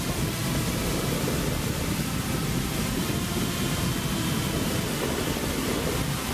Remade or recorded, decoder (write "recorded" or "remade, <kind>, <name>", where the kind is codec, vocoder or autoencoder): recorded